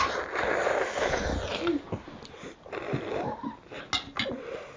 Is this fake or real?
real